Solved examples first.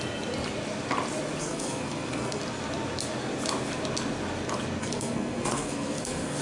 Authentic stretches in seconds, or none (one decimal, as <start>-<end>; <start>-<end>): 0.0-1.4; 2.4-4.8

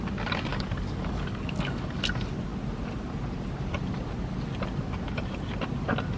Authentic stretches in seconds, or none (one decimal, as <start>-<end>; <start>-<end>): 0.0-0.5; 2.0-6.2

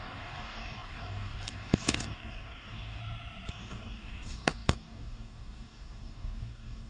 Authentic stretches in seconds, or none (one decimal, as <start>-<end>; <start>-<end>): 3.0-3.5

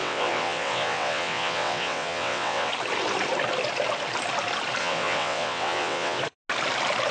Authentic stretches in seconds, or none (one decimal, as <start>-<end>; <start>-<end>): 2.7-4.8; 6.2-7.1